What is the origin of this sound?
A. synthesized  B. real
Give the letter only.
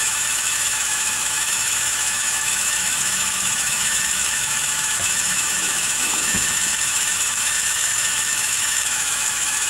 A